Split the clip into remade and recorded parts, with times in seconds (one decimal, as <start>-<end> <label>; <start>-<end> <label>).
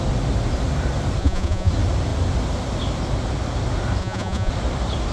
0.0-1.2 recorded; 1.2-1.7 remade; 1.7-4.0 recorded; 4.0-4.5 remade; 4.5-5.1 recorded